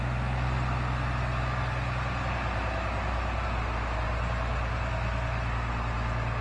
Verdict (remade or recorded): recorded